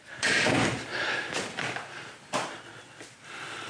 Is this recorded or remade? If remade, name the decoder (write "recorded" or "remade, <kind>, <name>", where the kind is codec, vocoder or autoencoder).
recorded